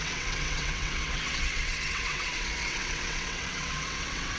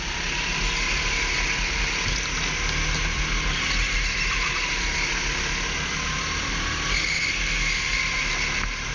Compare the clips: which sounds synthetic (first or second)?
first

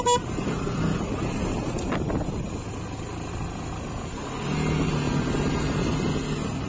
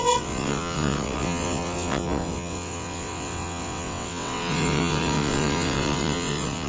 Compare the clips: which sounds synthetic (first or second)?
second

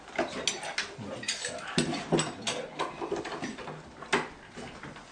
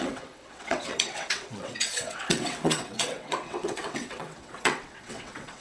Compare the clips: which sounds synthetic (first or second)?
second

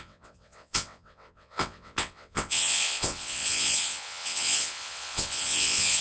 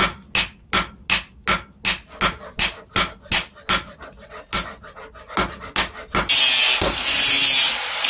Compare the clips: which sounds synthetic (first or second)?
first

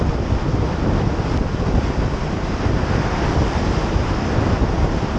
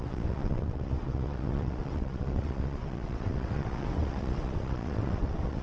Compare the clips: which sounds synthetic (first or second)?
second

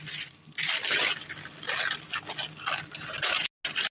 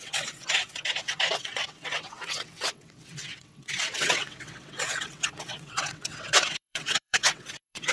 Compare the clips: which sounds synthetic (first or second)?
second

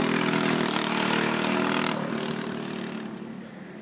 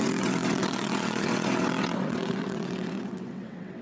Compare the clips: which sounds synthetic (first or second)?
second